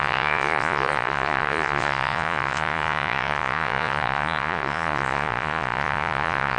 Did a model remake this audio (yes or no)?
yes